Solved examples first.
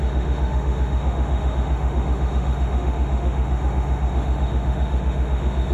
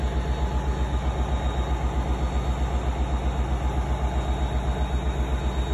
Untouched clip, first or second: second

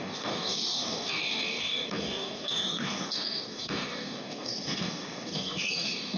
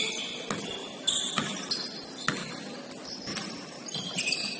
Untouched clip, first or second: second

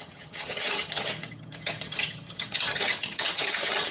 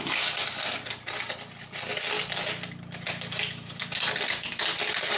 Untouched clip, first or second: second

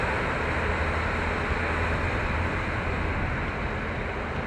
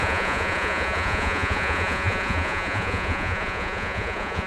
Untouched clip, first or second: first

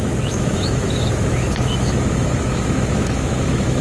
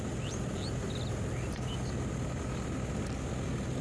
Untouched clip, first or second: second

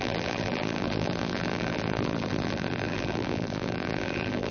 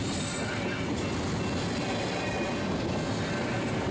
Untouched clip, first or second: second